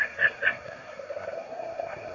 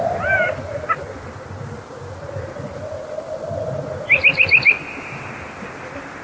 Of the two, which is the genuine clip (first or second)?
second